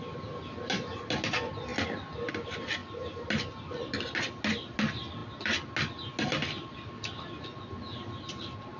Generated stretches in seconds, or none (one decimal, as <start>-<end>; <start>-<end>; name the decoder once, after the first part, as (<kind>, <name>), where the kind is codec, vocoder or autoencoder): none